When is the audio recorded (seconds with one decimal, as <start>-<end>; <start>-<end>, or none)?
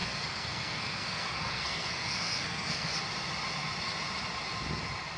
2.9-5.2